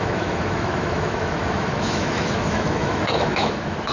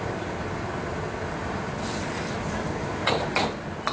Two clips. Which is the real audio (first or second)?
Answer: second